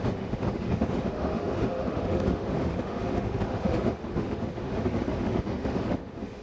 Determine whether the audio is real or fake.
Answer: fake